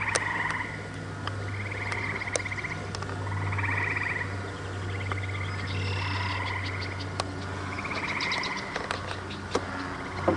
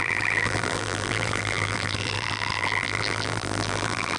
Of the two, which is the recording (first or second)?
first